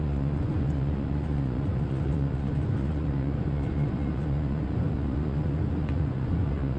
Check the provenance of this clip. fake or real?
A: fake